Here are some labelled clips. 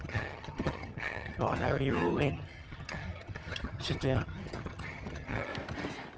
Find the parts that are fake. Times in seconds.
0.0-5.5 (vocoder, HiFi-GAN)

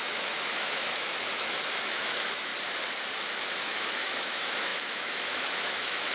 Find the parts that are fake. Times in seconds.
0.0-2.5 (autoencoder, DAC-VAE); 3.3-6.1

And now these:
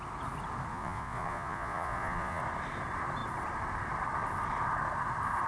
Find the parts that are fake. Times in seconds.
0.7-2.4 (vocoder, Vocos)

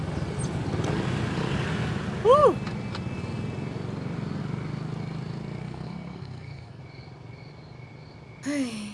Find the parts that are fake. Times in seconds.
5.6-6.8 (codec, SNAC)

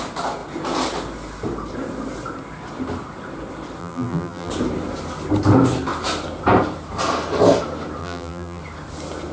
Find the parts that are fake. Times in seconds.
3.8-4.5 (vocoder, BigVGAN v2); 8.0-8.6